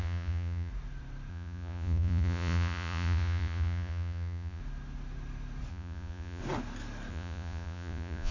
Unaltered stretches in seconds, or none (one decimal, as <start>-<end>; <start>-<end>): 0.7-1.3; 4.6-5.7; 6.4-7.1